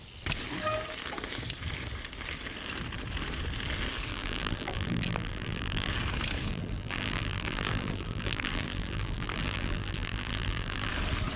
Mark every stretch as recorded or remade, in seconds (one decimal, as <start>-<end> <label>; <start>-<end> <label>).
0.0-4.1 recorded; 4.1-5.9 remade; 5.9-6.5 recorded; 6.5-10.9 remade; 10.9-11.4 recorded